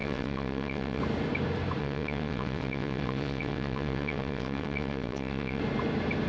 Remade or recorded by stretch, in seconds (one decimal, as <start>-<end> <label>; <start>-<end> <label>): 0.0-1.0 remade; 1.0-1.8 recorded; 1.8-5.6 remade; 5.6-6.3 recorded